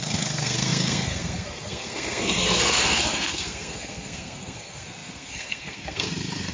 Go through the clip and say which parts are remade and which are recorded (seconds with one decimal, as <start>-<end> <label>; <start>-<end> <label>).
0.0-6.5 remade